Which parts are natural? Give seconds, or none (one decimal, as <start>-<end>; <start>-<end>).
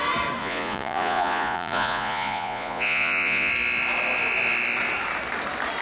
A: 0.0-0.4; 3.5-5.8